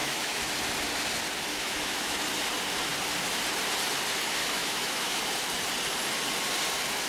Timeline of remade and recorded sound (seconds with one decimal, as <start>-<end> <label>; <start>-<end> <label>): 0.0-0.5 remade; 0.5-1.5 recorded; 1.5-2.2 remade; 2.2-4.4 recorded; 4.4-5.2 remade; 5.2-7.1 recorded